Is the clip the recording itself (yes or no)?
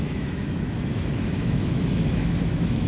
no